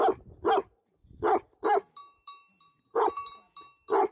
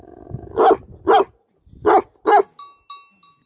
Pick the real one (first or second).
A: second